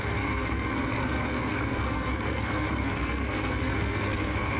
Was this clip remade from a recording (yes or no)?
yes